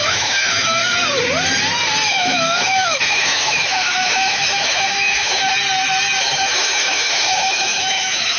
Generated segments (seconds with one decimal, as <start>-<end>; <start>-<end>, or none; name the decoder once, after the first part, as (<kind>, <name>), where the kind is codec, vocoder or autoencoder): 0.0-0.8 (autoencoder, DAC-VAE); 2.1-5.5; 6.2-8.4